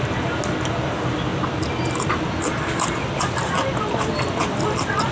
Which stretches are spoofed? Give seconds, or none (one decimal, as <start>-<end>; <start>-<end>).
none